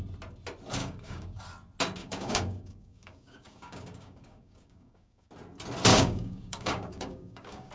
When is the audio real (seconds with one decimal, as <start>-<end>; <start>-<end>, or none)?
0.0-0.8; 1.4-2.0; 5.3-5.9